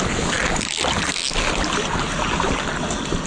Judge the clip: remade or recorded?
recorded